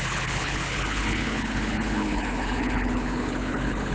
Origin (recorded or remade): remade